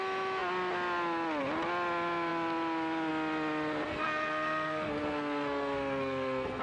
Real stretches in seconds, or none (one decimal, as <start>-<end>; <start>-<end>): 0.0-3.9